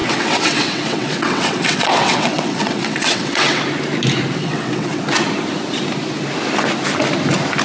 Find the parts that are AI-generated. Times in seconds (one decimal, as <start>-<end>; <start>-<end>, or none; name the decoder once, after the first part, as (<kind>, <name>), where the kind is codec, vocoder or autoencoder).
0.0-3.6 (vocoder, WaveNeXt); 4.4-5.0